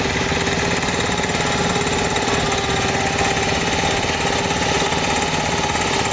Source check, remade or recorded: recorded